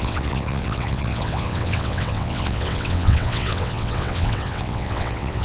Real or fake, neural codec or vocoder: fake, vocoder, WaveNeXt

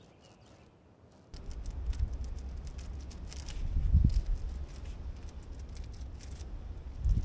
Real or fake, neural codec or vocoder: real